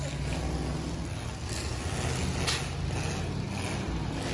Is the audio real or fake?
real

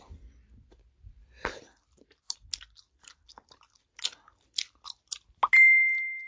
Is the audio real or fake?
real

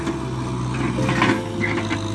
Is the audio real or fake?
real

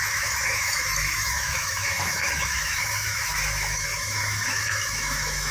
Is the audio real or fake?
fake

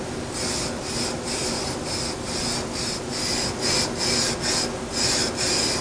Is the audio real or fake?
real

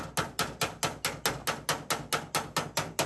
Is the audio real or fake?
real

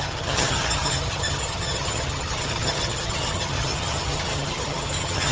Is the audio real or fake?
fake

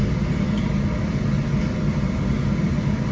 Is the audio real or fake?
real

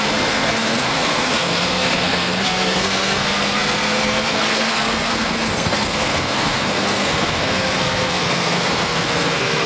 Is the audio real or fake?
fake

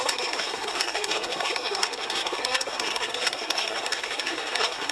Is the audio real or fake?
fake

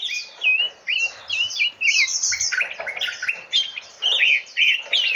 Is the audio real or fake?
real